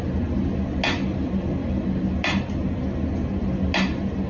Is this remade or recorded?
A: recorded